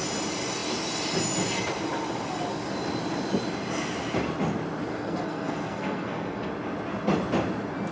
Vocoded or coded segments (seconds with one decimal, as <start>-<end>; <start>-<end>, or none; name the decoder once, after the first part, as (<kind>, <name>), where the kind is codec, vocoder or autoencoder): 4.9-6.5 (codec, SNAC)